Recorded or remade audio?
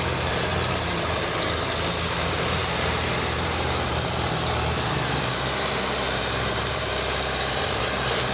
remade